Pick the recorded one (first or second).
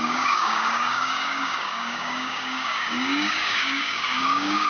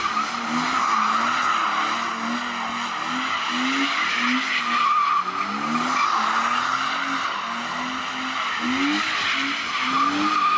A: second